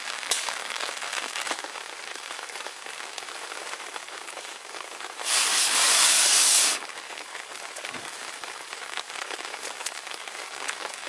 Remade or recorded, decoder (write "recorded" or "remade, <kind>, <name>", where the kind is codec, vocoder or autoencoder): remade, codec, DAC